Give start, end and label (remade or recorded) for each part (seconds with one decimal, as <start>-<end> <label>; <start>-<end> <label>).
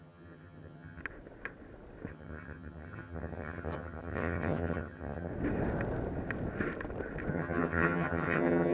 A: 0.0-1.0 remade; 1.0-2.1 recorded; 2.1-5.3 remade; 5.3-7.3 recorded; 7.3-8.7 remade